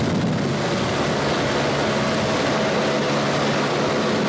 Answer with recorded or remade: recorded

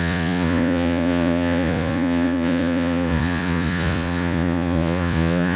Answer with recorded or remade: remade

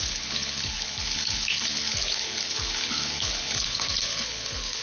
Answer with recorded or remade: remade